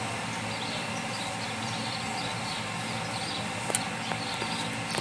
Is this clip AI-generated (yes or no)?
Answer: no